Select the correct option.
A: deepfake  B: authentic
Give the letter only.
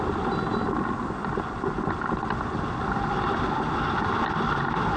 B